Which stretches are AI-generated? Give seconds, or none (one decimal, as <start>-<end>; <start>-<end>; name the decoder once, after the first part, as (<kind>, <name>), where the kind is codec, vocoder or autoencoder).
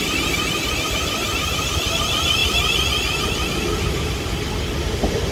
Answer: none